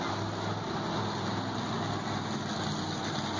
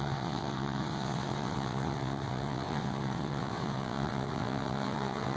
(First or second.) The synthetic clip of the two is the second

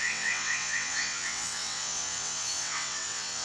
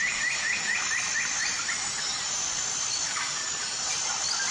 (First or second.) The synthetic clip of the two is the first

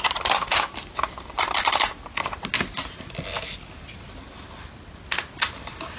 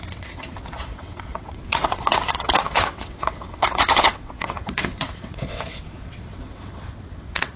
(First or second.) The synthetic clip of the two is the second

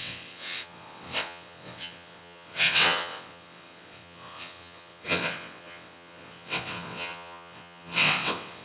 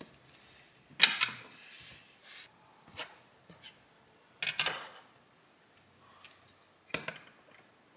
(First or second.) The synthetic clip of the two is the first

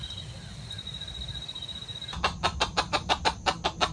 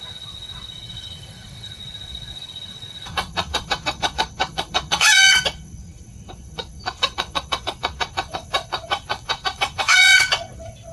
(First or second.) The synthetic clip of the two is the second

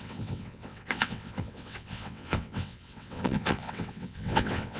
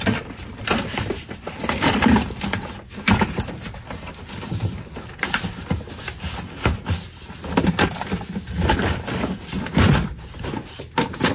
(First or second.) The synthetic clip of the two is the first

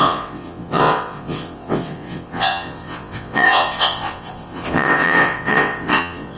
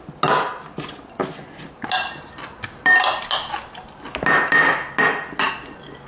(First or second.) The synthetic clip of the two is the first